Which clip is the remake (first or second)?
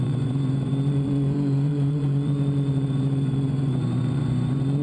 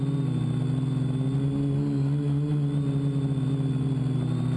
first